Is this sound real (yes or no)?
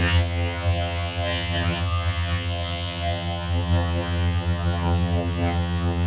no